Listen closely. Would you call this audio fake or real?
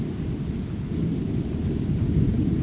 real